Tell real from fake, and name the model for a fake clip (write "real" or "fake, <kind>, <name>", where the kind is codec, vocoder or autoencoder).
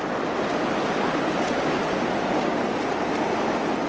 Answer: fake, vocoder, BigVGAN v2